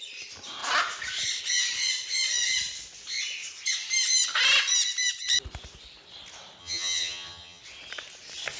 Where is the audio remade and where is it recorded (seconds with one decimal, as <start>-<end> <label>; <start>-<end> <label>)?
0.0-6.6 recorded; 6.6-7.6 remade; 7.6-8.6 recorded